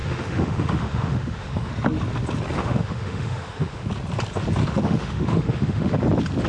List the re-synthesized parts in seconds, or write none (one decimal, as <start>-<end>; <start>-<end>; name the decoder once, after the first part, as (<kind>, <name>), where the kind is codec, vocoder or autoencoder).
0.0-1.7 (autoencoder, DAC-VAE); 2.6-3.9; 4.6-6.0